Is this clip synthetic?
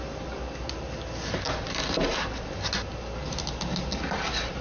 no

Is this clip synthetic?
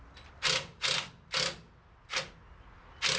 no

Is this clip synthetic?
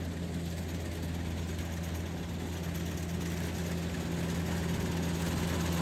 no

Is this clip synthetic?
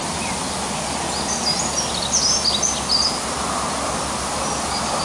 no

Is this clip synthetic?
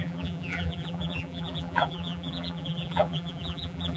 yes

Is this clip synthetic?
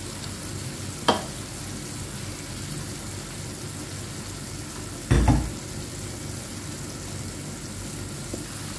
no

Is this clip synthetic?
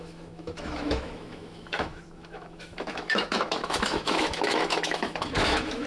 yes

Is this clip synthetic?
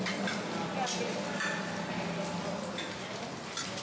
no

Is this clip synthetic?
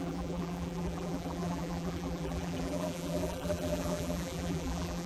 yes